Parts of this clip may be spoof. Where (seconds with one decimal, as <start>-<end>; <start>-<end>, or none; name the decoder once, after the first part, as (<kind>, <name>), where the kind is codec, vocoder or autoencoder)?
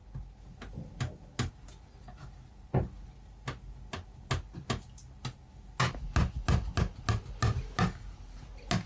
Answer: none